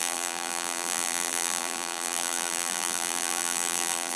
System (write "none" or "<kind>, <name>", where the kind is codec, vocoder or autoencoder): vocoder, BigVGAN v2